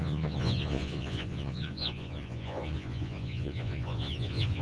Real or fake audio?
fake